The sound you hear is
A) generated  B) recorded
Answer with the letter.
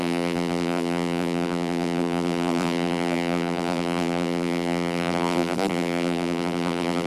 A